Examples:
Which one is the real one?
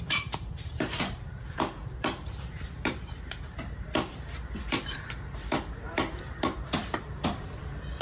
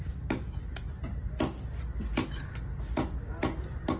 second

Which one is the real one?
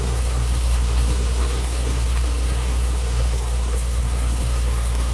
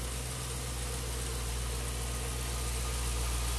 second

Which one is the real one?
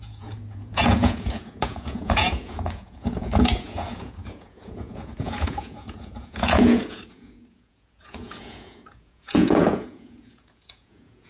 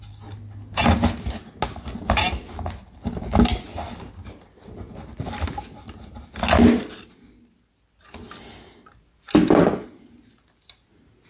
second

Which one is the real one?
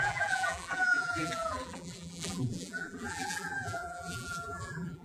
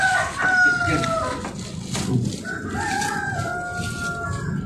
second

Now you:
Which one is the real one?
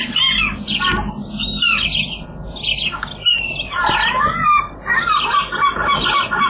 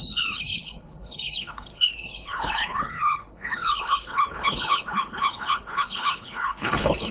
first